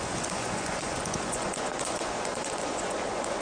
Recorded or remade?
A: remade